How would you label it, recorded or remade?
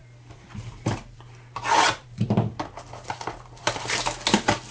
remade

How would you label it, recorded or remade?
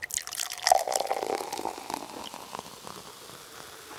recorded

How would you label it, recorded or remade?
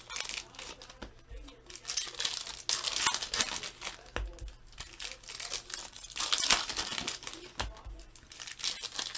recorded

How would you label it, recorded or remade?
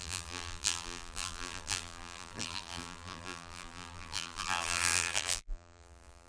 remade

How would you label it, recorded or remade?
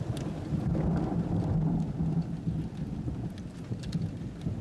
recorded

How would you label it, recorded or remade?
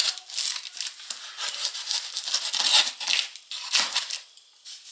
recorded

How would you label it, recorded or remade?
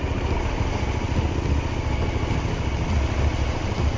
recorded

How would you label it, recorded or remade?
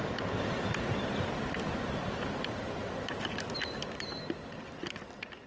recorded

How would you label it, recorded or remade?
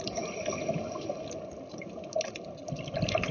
recorded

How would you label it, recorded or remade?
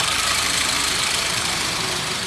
remade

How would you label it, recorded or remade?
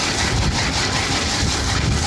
recorded